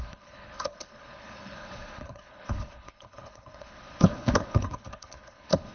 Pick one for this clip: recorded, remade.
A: remade